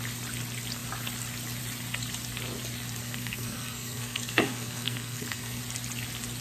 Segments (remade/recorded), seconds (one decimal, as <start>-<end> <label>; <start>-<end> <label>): 0.0-3.0 recorded; 3.0-5.6 remade; 5.6-6.4 recorded